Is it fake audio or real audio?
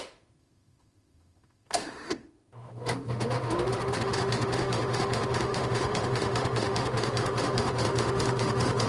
fake